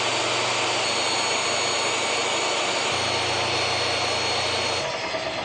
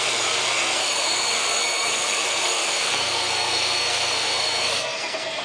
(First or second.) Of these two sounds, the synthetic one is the second